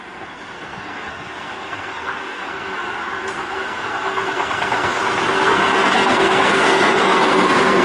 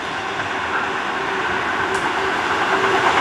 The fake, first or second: first